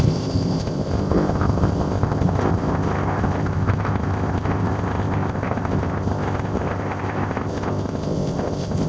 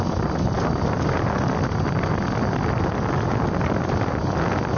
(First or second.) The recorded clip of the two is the second